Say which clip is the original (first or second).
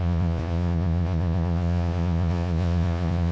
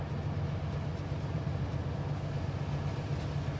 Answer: second